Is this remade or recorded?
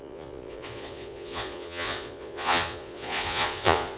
remade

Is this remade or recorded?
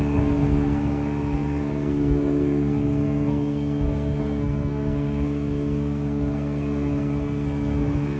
remade